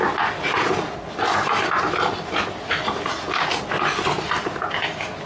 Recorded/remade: recorded